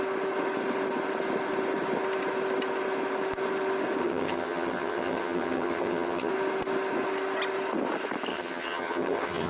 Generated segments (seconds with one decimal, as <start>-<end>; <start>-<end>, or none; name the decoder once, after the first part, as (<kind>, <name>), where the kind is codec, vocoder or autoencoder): 4.0-6.3 (vocoder, HiFi-GAN); 8.3-9.5

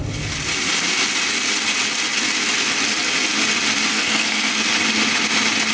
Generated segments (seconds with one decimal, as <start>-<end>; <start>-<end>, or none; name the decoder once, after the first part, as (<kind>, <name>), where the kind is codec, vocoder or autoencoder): 3.9-4.5 (codec, SNAC)